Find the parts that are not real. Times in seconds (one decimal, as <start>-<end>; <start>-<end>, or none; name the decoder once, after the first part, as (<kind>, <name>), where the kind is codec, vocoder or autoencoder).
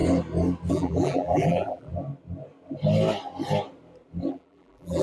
0.7-1.9 (vocoder, BigVGAN v2); 4.3-5.0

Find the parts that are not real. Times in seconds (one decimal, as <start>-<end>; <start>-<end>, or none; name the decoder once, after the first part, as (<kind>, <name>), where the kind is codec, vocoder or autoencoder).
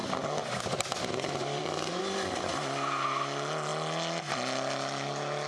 1.4-2.0 (vocoder, BigVGAN v2)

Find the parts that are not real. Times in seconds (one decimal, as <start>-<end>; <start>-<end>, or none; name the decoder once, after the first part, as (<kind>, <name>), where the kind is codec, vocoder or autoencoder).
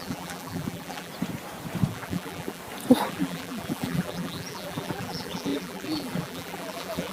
0.0-1.1 (vocoder, BigVGAN v2); 1.9-2.6; 3.1-7.1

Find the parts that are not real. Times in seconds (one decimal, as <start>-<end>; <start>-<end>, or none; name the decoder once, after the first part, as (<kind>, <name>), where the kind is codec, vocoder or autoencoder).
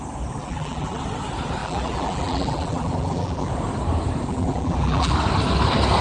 0.4-1.0 (vocoder, BigVGAN v2); 1.6-3.5; 4.3-5.1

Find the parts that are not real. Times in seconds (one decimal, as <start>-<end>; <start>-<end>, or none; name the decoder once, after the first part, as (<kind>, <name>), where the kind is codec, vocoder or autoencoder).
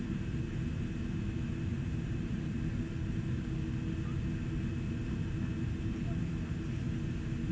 1.7-2.6 (vocoder, BigVGAN v2)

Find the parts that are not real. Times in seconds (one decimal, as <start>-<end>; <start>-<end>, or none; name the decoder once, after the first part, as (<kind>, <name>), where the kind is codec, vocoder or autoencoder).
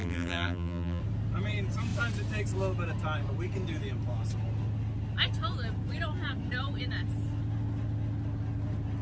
0.0-1.0 (vocoder, BigVGAN v2)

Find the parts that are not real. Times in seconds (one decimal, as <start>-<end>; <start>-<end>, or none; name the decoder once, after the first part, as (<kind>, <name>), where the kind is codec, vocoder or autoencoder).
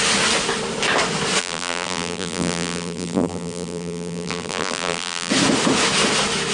1.4-5.3 (vocoder, BigVGAN v2)